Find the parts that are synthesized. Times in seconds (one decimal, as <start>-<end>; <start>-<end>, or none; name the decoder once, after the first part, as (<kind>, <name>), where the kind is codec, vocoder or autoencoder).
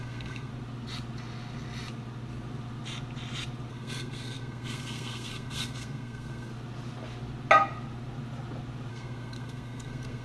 0.0-0.5 (codec, SNAC); 3.7-6.5; 8.9-10.2